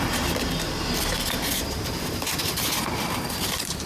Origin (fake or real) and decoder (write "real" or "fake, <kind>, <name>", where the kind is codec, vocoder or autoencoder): fake, vocoder, BigVGAN v2